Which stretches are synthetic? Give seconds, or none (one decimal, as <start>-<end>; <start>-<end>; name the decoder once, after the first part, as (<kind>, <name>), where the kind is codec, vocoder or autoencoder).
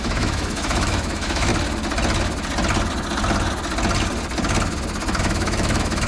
0.0-1.5 (autoencoder, DAC-VAE); 5.2-6.1